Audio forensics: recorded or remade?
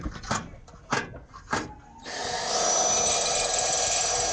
recorded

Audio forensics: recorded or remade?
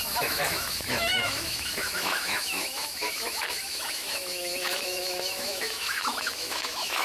remade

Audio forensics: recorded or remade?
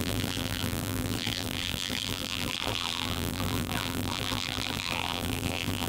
remade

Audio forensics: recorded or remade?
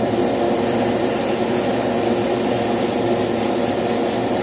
recorded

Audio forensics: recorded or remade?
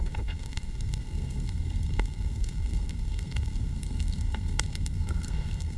remade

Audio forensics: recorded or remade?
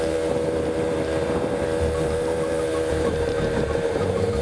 remade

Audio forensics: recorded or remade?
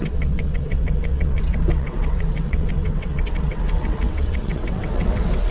remade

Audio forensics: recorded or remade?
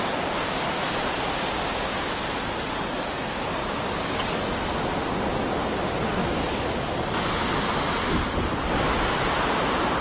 recorded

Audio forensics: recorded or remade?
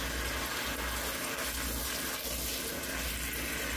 recorded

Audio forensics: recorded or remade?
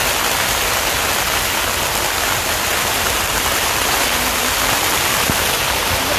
recorded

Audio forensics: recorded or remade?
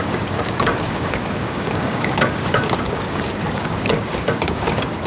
remade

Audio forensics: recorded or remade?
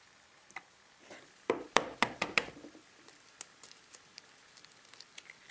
recorded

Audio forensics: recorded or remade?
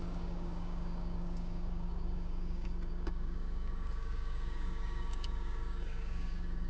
remade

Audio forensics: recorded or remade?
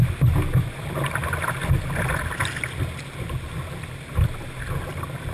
recorded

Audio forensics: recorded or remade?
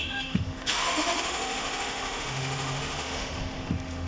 remade